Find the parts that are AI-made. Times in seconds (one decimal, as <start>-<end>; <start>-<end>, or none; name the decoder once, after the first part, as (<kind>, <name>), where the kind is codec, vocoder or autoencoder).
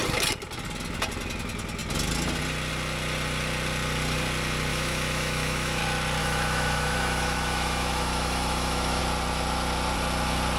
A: 4.7-5.8 (autoencoder, DAC-VAE); 6.2-9.0